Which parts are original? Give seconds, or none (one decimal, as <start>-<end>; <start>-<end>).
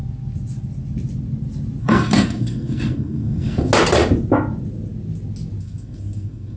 0.0-1.8; 3.7-5.6